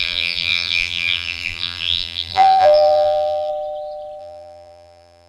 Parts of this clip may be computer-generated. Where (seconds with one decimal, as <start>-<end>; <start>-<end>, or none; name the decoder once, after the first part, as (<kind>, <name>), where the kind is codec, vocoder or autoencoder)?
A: 0.0-3.5 (vocoder, BigVGAN v2); 4.2-5.3